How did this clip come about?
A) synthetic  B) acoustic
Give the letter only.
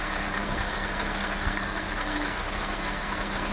A